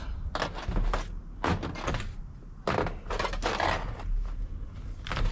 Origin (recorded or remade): recorded